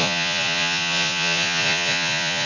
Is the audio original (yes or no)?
no